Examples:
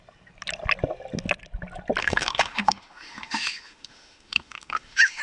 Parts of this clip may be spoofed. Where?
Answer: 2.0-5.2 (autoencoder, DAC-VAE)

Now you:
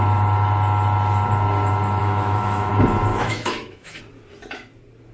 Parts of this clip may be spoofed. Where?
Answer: 2.0-2.7 (autoencoder, DAC-VAE); 3.1-4.0